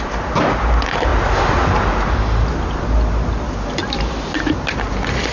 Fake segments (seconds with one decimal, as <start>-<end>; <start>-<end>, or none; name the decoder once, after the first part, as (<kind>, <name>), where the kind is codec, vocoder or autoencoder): none